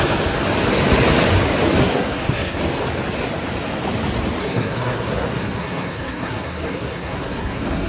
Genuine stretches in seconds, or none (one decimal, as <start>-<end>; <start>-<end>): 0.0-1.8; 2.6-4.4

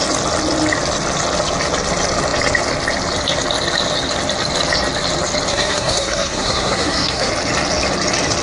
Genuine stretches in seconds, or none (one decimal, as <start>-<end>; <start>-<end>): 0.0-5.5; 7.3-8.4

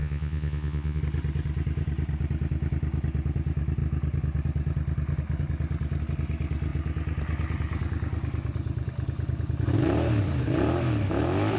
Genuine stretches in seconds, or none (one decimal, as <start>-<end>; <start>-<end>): 1.0-11.6

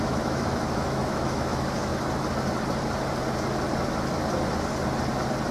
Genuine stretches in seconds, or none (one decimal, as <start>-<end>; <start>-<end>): 1.9-5.5

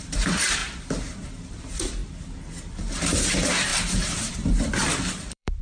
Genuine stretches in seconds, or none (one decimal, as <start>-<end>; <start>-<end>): 0.6-1.6; 2.0-3.3; 3.7-4.3